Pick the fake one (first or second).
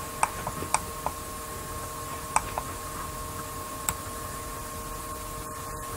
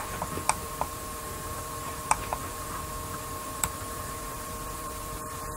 second